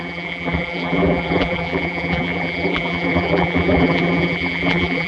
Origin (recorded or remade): remade